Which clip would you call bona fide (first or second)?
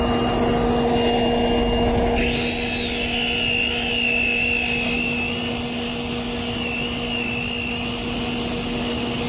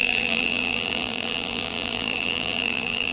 first